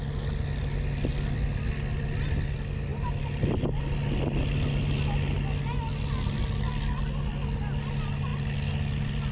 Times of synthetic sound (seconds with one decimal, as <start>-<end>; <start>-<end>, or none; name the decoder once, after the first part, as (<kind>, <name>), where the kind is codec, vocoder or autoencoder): none